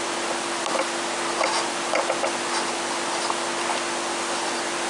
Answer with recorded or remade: recorded